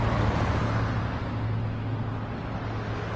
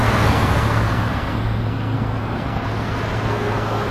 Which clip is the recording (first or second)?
first